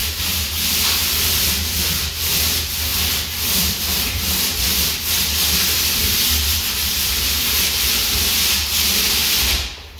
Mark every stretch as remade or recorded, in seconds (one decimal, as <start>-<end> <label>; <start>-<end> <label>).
0.0-2.9 recorded; 2.9-8.1 remade; 8.1-10.0 recorded